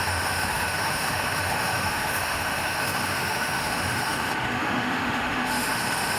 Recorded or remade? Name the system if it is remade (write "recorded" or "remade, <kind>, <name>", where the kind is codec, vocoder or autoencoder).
remade, autoencoder, DAC-VAE